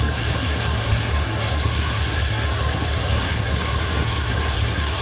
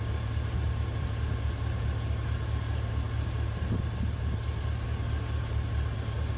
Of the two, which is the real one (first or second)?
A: second